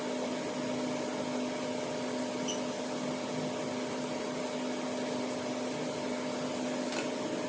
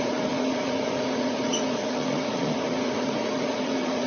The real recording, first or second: first